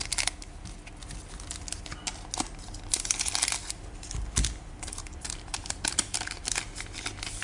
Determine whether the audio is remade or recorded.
recorded